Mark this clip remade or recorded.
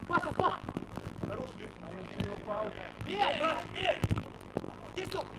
remade